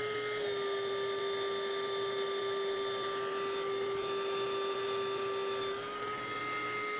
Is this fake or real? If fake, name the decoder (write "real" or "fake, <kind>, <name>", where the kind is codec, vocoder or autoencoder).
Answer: real